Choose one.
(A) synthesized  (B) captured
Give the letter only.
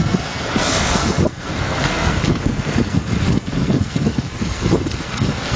A